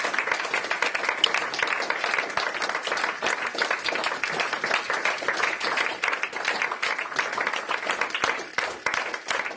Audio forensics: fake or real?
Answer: real